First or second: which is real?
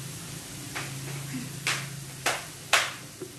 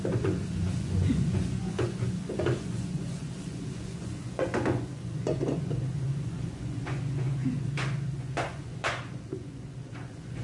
first